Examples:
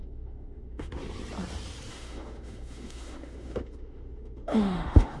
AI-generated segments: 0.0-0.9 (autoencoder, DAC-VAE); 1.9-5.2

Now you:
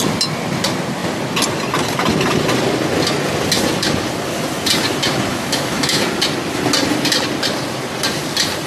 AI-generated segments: 5.3-6.0 (autoencoder, DAC-VAE)

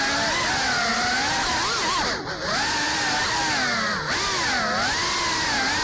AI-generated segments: none

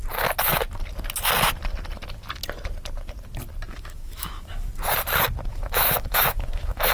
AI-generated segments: 3.7-4.7 (autoencoder, DAC-VAE); 5.5-6.9

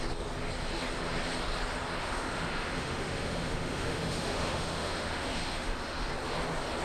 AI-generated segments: 2.0-6.1 (autoencoder, DAC-VAE)

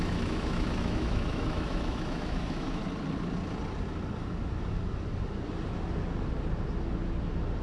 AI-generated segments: 0.0-2.8 (autoencoder, DAC-VAE)